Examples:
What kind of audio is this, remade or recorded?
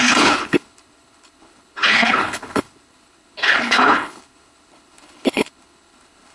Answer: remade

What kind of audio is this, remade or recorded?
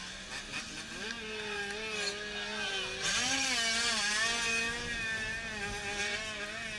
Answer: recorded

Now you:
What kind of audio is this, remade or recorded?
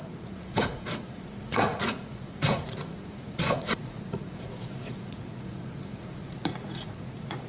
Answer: remade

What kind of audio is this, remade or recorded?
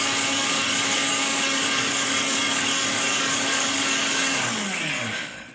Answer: remade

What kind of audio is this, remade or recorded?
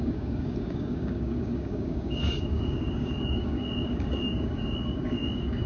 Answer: remade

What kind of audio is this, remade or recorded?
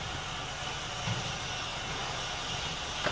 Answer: recorded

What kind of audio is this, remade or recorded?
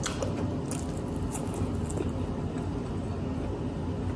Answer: recorded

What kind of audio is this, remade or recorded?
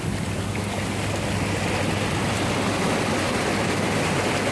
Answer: recorded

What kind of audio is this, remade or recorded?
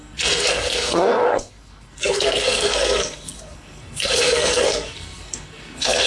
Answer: remade